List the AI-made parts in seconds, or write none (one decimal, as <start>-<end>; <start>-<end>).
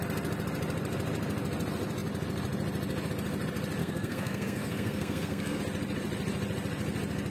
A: 3.8-5.6